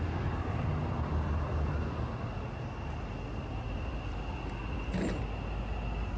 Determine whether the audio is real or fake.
real